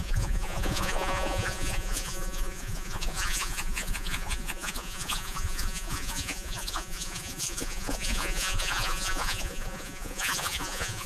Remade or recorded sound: remade